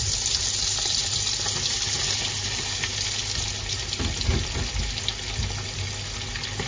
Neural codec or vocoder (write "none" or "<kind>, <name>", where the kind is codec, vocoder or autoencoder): none